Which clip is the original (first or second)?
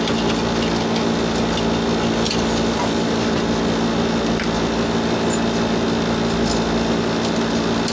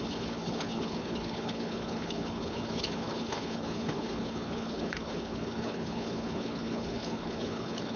first